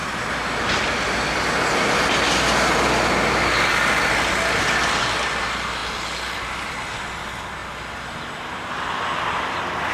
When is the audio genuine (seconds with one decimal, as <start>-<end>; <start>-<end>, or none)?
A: 0.0-9.9